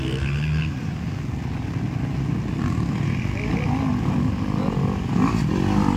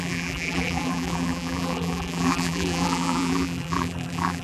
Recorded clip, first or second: first